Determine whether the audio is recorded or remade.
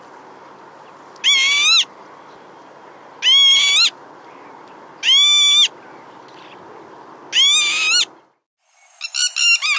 recorded